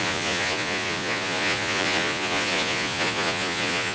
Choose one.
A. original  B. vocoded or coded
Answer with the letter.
B